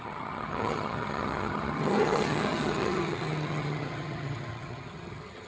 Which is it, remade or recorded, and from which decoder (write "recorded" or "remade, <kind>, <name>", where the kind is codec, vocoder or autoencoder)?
remade, vocoder, HiFi-GAN